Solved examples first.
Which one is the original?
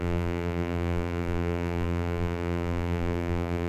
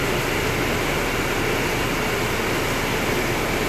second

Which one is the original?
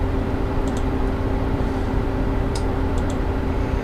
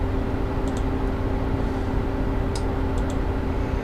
second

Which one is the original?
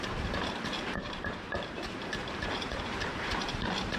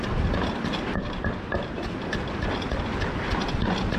second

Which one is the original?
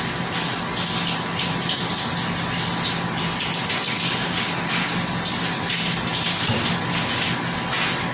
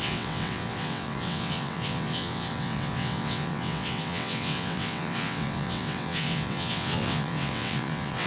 first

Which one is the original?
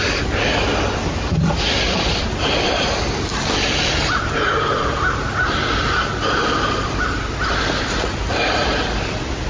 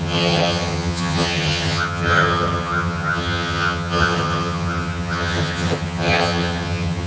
first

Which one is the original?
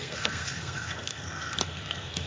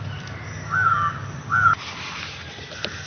second